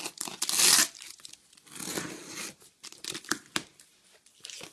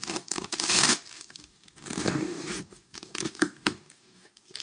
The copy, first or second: second